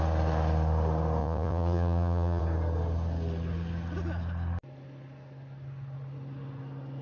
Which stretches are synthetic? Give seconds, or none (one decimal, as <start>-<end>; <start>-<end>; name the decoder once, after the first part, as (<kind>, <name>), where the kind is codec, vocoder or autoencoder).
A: 1.2-2.4 (vocoder, Vocos)